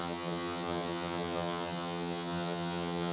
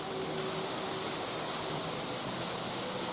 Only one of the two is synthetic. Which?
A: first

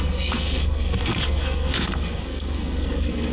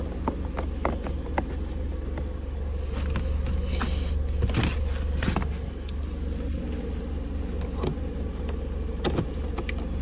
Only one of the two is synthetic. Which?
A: first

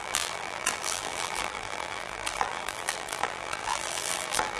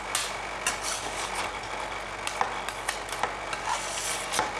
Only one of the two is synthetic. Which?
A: first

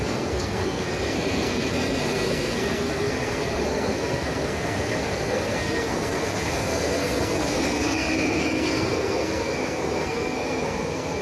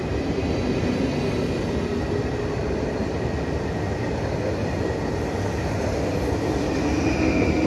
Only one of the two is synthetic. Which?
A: first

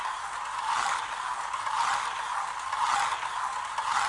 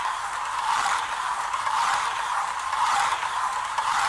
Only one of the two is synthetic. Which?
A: second